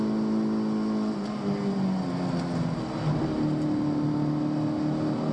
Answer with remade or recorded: recorded